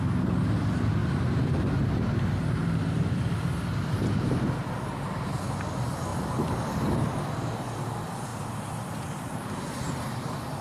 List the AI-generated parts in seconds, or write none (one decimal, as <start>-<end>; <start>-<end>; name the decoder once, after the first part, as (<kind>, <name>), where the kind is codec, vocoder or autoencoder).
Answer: 1.0-1.5 (vocoder, BigVGAN v2); 6.1-7.2; 8.3-10.6